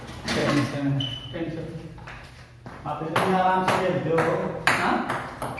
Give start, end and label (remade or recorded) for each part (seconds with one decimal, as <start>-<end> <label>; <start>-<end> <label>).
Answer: 0.0-0.4 recorded; 0.4-3.8 remade; 3.8-4.4 recorded; 4.4-5.1 remade; 5.1-5.6 recorded